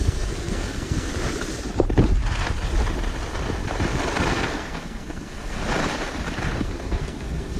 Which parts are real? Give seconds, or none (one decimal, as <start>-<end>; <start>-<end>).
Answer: 1.1-4.3; 5.6-6.6